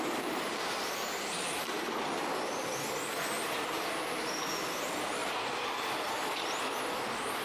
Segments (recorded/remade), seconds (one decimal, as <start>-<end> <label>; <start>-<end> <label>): 0.0-2.3 remade; 2.3-3.4 recorded; 3.4-5.2 remade; 5.2-7.4 recorded